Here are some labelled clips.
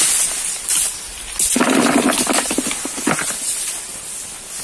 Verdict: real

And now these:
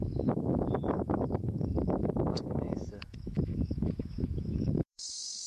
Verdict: fake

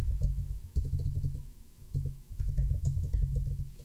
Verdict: fake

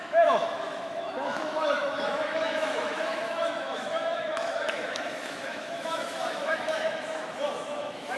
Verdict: fake